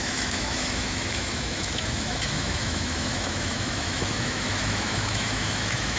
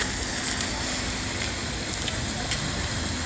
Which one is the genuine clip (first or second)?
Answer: second